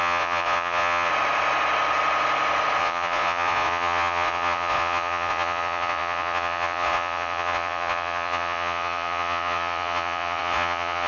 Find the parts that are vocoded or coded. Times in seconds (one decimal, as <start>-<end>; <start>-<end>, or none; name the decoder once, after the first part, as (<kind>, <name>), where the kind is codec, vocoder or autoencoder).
0.0-1.1 (vocoder, Vocos); 2.8-11.1